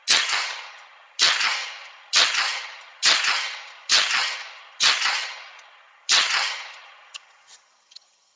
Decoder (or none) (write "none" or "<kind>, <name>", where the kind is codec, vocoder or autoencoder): vocoder, HiFi-GAN